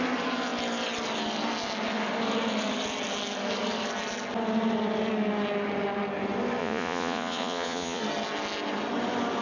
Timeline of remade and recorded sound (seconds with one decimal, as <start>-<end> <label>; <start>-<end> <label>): 0.0-6.6 recorded; 6.6-8.0 remade; 8.0-9.4 recorded